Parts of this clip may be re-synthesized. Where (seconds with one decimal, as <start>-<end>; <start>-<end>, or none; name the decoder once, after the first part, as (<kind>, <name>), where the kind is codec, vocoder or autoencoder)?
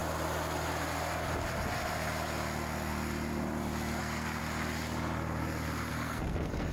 4.0-4.4 (codec, SNAC); 5.9-6.7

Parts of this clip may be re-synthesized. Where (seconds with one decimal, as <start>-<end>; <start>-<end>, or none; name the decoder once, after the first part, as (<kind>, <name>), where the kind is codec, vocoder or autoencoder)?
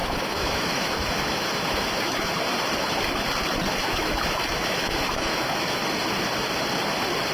0.0-2.3 (autoencoder, DAC-VAE); 3.8-5.8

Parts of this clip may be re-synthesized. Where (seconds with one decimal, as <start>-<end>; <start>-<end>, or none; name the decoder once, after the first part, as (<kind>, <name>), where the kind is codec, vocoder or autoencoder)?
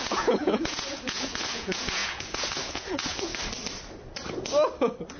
0.0-3.3 (vocoder, Vocos)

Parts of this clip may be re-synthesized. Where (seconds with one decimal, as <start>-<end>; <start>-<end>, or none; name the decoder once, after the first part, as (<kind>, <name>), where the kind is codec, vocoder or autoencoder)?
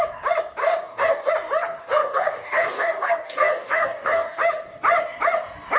0.6-1.3 (codec, DAC); 1.8-4.4